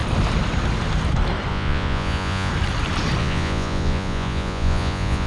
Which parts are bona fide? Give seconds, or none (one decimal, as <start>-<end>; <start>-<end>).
0.0-1.5; 2.5-3.2